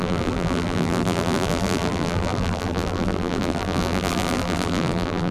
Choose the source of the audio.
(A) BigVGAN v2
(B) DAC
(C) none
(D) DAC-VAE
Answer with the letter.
A